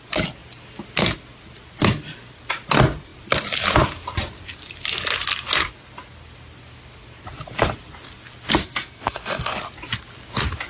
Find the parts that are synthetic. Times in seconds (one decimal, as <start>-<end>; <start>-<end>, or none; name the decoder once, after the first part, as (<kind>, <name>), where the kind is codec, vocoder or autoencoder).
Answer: 8.6-9.5 (codec, SNAC)